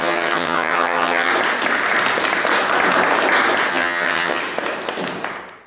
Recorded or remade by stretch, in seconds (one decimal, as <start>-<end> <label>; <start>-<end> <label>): 0.0-1.3 remade; 1.3-3.7 recorded; 3.7-4.4 remade; 4.4-5.7 recorded